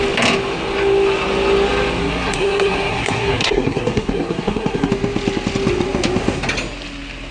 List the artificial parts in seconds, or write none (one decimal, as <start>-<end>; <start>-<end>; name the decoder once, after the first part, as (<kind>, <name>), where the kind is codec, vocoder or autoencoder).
2.0-4.9 (codec, SNAC)